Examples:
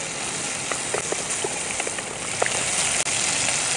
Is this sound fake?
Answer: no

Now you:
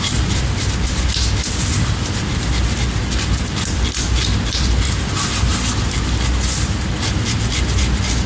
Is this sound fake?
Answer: no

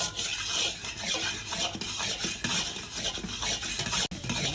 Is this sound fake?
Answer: no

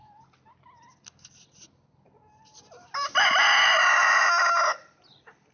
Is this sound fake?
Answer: no